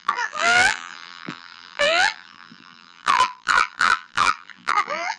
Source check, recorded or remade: remade